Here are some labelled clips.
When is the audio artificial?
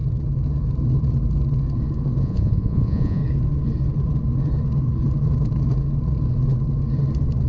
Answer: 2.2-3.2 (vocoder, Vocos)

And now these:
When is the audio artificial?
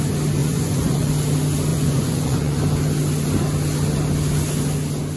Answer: 0.4-1.1 (vocoder, Vocos); 1.7-2.6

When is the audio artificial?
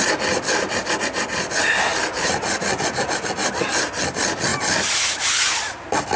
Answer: none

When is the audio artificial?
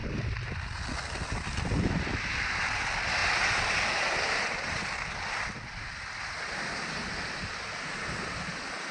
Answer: none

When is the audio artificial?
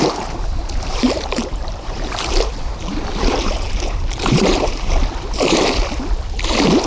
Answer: 0.9-5.0 (vocoder, BigVGAN v2)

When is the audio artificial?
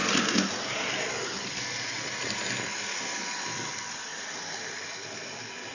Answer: none